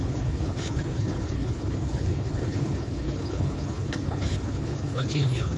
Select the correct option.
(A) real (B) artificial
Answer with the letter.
B